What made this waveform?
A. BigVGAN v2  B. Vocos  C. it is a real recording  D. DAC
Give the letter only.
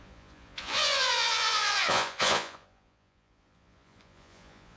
B